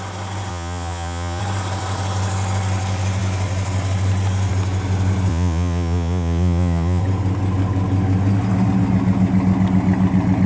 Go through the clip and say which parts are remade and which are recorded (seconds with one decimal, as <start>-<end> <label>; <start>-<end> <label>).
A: 0.0-0.5 recorded; 0.5-1.4 remade; 1.4-5.3 recorded; 5.3-7.0 remade; 7.0-10.5 recorded